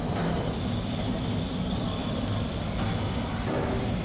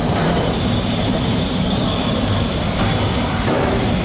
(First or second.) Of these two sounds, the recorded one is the first